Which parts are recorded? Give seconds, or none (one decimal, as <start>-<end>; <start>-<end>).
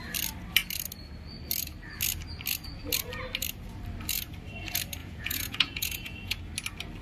0.0-5.0; 6.4-7.0